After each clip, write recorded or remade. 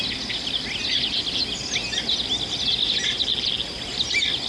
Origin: recorded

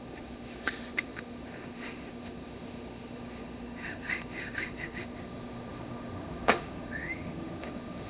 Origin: remade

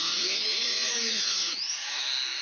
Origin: remade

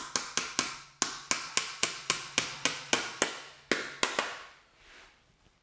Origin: recorded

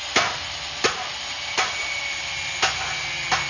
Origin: recorded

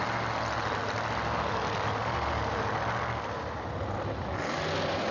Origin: recorded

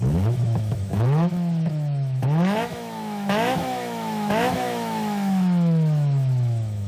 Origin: remade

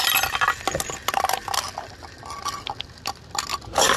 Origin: recorded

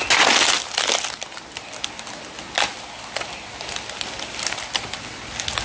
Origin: recorded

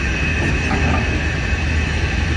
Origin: recorded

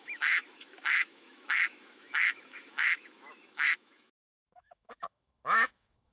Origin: remade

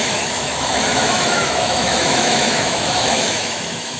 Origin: remade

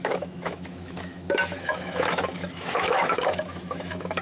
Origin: remade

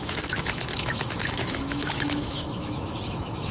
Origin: remade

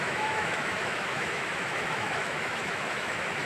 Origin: remade